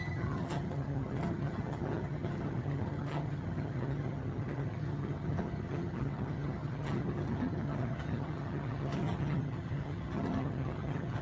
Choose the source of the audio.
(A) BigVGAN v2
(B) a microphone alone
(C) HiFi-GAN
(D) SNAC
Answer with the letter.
C